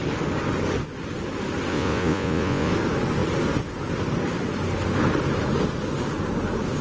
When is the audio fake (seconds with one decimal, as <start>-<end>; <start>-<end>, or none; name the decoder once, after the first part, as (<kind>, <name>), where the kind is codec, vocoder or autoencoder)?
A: 1.7-2.7 (vocoder, Vocos)